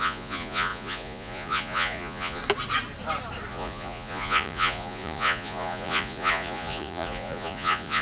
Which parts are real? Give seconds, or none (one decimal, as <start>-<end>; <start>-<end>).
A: 2.4-3.5